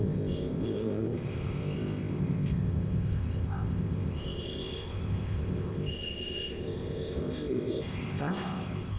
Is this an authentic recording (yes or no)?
no